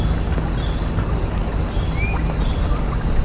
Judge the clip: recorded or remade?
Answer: recorded